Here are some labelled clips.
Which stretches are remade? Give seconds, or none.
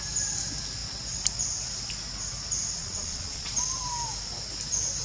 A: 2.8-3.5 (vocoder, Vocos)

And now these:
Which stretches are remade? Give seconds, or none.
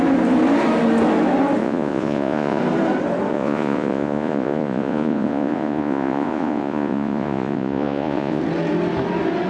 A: 1.6-2.6 (vocoder, Vocos); 3.3-8.4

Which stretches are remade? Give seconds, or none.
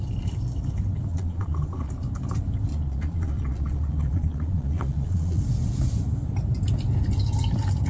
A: 1.1-1.9 (vocoder, Vocos); 2.7-5.4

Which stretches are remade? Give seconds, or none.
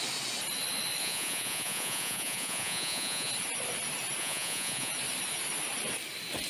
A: 1.0-3.3 (vocoder, Vocos); 4.2-4.9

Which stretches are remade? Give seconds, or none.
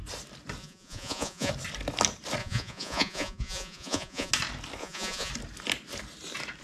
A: 0.6-1.5 (vocoder, Vocos); 2.4-4.3; 4.8-5.3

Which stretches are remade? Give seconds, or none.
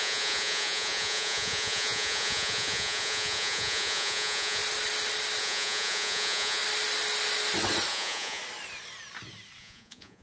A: 0.0-4.6 (vocoder, Vocos); 5.4-6.6; 7.9-8.4; 9.6-10.2